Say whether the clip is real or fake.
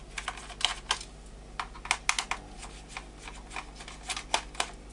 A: real